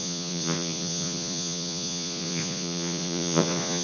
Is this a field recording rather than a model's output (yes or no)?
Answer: no